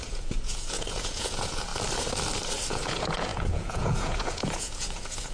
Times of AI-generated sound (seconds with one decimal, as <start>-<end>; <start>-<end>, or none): 0.0-1.7; 2.7-5.3